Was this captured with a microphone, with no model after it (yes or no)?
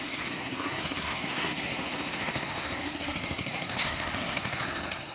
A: no